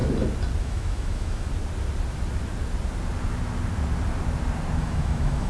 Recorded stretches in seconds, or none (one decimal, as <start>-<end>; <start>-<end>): 0.0-0.6; 1.5-4.8